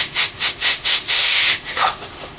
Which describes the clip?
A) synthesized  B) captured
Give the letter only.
A